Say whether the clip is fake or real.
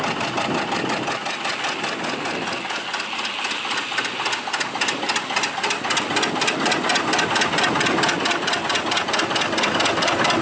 real